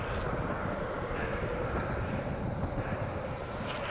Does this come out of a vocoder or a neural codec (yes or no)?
no